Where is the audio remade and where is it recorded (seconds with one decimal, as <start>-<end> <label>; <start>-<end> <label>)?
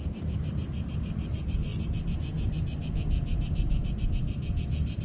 0.0-5.0 recorded